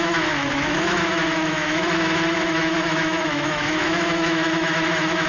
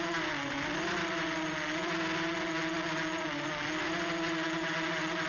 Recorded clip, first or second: second